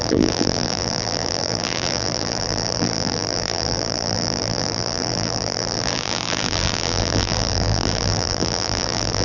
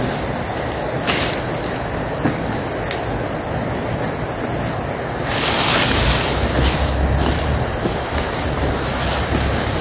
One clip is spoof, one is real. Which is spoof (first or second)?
first